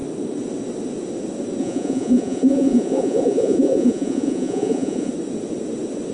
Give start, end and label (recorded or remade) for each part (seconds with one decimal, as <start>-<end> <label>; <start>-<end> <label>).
0.0-1.6 recorded; 1.6-5.1 remade; 5.1-6.1 recorded